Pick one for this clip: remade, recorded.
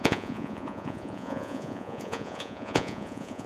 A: remade